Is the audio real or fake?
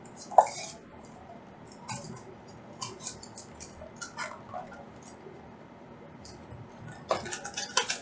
fake